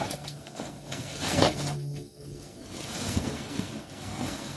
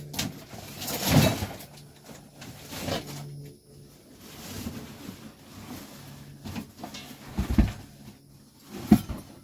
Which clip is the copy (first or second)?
first